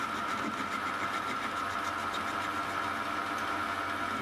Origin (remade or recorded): recorded